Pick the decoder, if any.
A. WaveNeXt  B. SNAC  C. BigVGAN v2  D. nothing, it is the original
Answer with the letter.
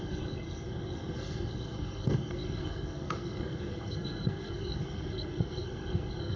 B